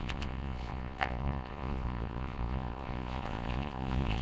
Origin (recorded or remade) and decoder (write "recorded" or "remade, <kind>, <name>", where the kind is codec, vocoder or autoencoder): remade, vocoder, Vocos